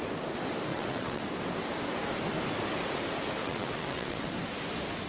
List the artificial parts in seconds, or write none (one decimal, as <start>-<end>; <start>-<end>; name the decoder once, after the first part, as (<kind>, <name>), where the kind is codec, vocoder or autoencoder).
0.7-1.2 (vocoder, WaveNeXt); 3.4-4.3